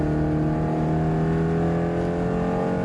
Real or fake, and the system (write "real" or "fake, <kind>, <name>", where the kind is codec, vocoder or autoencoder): real